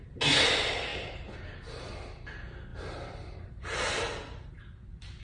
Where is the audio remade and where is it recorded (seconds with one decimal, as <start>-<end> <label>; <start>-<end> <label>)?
0.0-5.2 recorded